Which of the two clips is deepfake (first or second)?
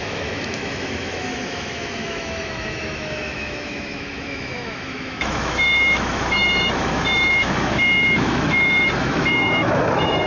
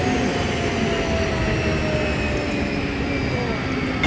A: first